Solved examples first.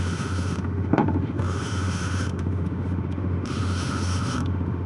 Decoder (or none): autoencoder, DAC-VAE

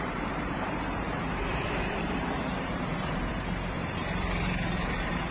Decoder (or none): vocoder, BigVGAN v2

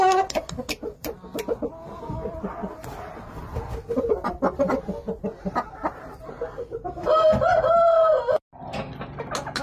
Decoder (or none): none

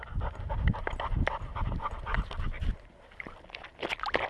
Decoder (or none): none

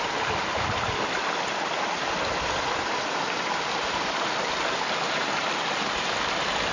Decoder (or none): none